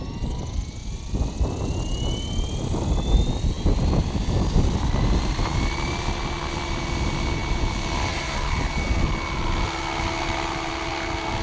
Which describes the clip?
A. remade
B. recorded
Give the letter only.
B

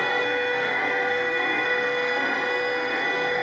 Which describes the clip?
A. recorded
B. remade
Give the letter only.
B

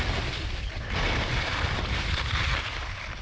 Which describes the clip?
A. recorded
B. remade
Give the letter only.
A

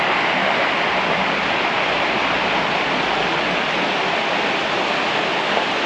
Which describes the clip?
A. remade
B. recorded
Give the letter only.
B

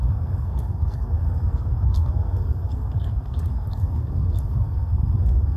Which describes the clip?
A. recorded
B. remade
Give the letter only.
B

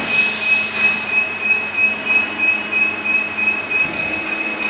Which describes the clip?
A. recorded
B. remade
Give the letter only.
A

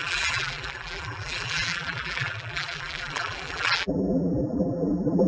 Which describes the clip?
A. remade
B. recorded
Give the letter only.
A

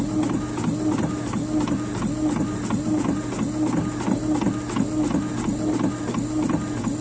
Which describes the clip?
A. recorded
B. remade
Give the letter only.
A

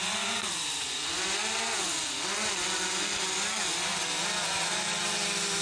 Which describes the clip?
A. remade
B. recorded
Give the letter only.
B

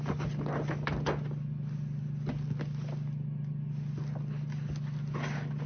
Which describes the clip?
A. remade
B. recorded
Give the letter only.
B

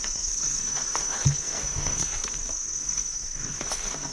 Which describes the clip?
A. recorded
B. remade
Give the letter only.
B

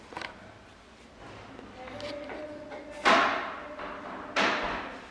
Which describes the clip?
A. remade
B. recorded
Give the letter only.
B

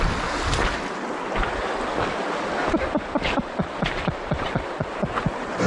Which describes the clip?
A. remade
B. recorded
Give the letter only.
B